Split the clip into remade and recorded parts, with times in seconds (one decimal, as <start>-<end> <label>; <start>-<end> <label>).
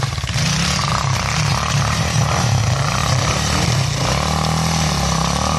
0.0-1.5 recorded; 1.5-2.6 remade; 2.6-5.6 recorded